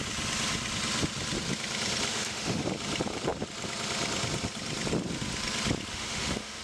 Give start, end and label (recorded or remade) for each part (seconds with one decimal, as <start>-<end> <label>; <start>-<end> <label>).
0.0-2.1 recorded; 2.1-2.6 remade; 2.6-5.9 recorded; 5.9-6.6 remade

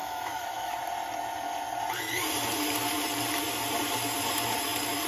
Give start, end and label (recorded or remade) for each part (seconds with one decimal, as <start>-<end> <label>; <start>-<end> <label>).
0.0-0.8 remade; 0.8-5.1 recorded

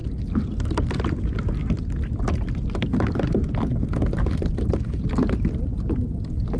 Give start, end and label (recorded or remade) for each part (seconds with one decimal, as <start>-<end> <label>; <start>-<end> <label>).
0.0-6.6 recorded

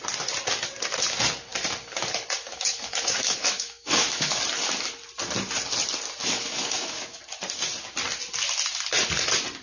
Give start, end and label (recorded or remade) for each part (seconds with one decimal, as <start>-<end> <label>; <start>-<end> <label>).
0.0-2.5 recorded; 2.5-4.4 remade; 4.4-6.2 recorded; 6.2-7.2 remade; 7.2-9.6 recorded

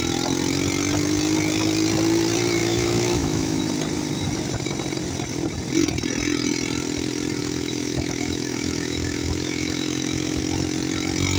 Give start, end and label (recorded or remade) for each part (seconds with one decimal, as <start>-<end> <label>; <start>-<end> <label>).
0.0-2.6 recorded; 2.6-3.6 remade; 3.6-7.4 recorded; 7.4-10.4 remade; 10.4-11.4 recorded

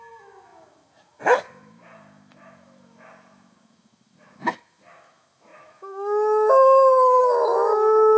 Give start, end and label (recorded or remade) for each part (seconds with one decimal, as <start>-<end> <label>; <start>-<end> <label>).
0.0-8.2 remade

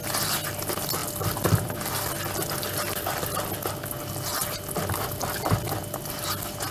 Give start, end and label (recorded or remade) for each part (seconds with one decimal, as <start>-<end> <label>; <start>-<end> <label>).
0.0-6.7 recorded

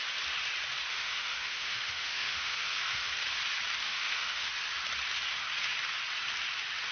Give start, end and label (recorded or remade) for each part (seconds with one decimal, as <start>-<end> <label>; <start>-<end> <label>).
0.0-0.9 recorded; 0.9-3.1 remade; 3.1-3.8 recorded; 3.8-4.5 remade; 4.5-6.9 recorded